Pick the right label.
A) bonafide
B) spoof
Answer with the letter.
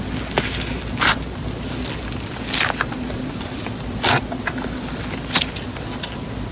A